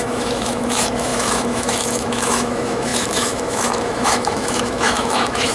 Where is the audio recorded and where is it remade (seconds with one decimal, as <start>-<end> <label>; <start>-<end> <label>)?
0.0-5.5 remade